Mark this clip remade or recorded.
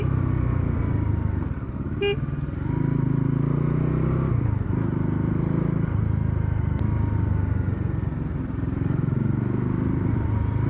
recorded